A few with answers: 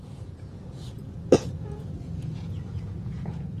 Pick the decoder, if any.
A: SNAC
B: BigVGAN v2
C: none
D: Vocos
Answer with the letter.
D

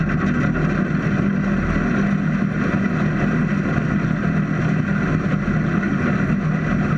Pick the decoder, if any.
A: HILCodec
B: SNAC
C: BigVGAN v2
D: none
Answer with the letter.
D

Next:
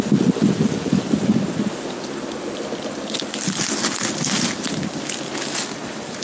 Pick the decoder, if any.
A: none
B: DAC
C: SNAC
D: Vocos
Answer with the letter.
A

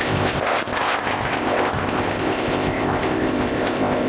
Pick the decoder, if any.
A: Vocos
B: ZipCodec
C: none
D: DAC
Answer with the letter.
B